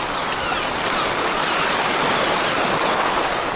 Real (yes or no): yes